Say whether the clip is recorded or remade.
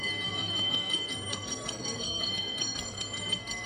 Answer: remade